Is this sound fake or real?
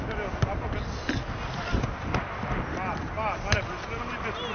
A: real